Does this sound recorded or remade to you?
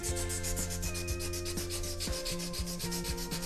recorded